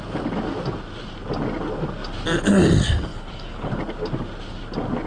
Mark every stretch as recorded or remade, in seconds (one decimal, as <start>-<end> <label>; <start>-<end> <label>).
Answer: 0.0-3.1 recorded; 3.1-3.7 remade; 3.7-5.1 recorded